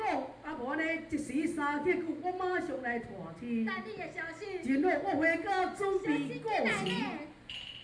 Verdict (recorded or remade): recorded